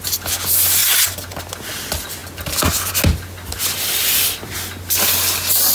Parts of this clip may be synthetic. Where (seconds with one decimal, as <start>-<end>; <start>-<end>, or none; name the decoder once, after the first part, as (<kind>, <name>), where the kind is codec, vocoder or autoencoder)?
none